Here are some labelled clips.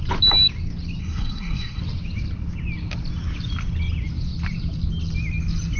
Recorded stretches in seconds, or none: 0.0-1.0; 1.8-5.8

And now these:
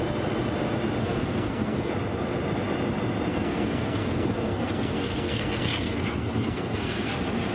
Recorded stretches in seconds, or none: 0.0-1.0; 1.9-3.3; 7.1-7.5

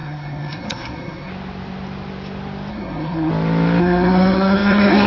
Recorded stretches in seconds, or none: 1.3-2.7; 3.3-3.8

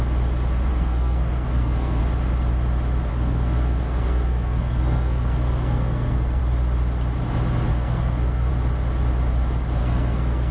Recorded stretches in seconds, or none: 0.0-0.7; 2.0-3.1; 6.4-7.7; 8.5-9.8

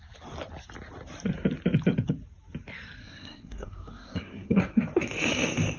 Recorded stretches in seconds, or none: 0.0-3.0; 4.6-5.8

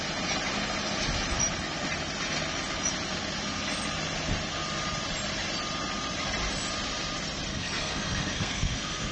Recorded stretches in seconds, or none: 0.0-7.5